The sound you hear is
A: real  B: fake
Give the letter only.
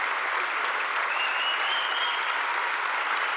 A